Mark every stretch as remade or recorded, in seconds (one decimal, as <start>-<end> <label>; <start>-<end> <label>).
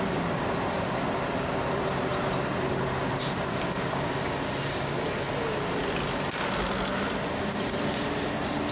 0.0-8.7 recorded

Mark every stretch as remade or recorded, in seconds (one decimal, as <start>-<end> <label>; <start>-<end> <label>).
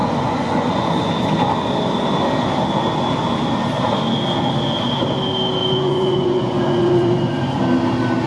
0.0-1.1 remade; 1.1-5.6 recorded; 5.6-7.6 remade; 7.6-8.3 recorded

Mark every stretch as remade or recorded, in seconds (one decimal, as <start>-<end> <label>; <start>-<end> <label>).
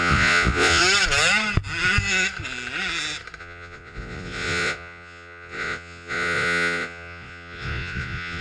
0.0-0.8 remade; 0.8-3.4 recorded; 3.4-8.4 remade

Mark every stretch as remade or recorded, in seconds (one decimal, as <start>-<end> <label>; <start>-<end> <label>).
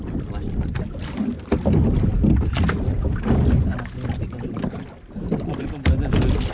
0.0-6.5 recorded